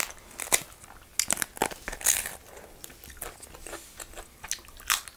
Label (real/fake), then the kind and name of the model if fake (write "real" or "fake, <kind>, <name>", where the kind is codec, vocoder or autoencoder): real